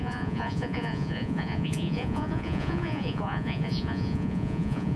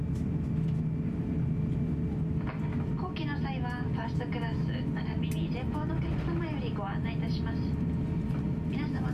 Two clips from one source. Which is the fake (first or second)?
first